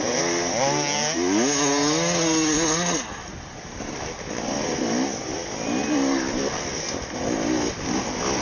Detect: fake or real real